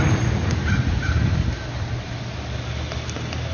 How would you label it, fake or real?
real